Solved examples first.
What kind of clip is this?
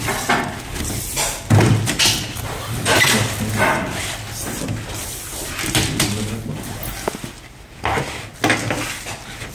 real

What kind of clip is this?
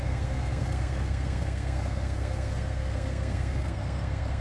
fake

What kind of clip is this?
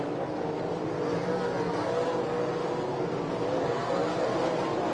real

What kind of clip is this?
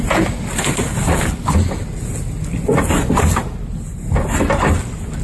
real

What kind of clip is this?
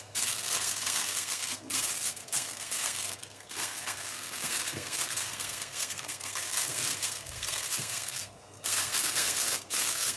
fake